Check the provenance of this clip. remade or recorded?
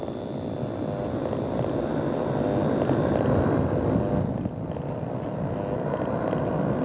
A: recorded